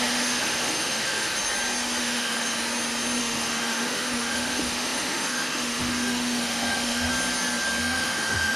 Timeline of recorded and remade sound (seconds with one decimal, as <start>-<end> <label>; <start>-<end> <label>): 0.0-1.3 remade; 1.3-2.0 recorded; 2.0-2.6 remade; 2.6-3.2 recorded; 3.2-7.1 remade; 7.1-7.8 recorded; 7.8-8.6 remade